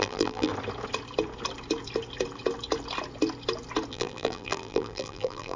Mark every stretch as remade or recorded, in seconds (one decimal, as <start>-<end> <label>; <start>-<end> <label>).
0.0-0.5 remade; 0.5-3.9 recorded; 3.9-5.6 remade